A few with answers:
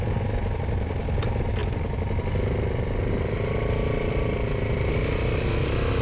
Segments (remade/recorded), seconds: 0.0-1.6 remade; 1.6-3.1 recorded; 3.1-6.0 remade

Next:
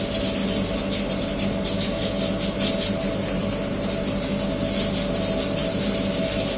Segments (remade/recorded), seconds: 0.0-6.6 recorded

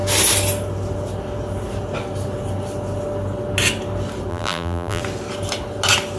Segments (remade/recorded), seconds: 0.0-4.3 recorded; 4.3-5.0 remade; 5.0-6.2 recorded

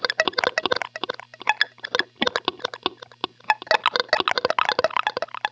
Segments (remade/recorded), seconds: 0.0-5.5 recorded

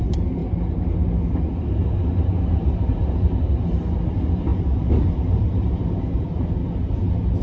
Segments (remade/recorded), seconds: 0.0-0.4 remade; 0.4-2.4 recorded; 2.4-6.6 remade; 6.6-7.4 recorded